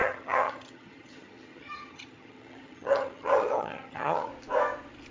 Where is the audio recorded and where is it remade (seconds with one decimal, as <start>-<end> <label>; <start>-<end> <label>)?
0.0-4.3 remade; 4.3-5.1 recorded